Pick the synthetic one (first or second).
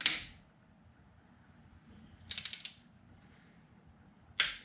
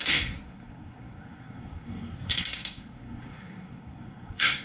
second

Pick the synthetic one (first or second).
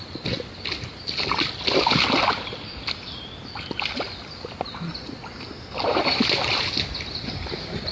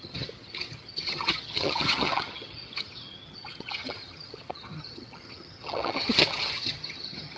second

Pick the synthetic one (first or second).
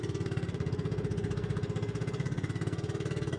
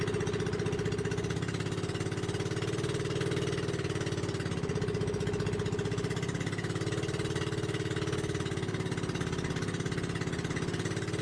first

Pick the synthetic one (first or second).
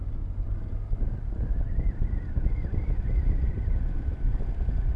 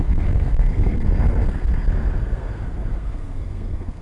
second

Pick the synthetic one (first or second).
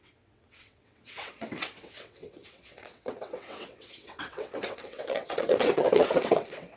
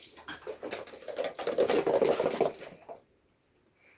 first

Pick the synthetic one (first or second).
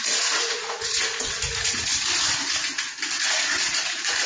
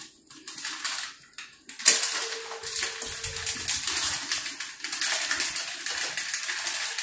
first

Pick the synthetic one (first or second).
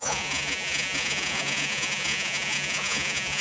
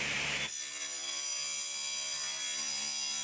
first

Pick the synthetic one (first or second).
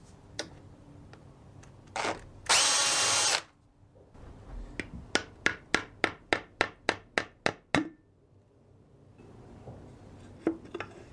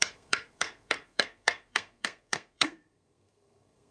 second